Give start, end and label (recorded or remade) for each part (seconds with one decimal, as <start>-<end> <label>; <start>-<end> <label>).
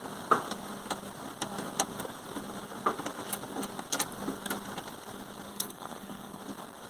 0.0-5.5 recorded; 5.5-6.4 remade; 6.4-6.9 recorded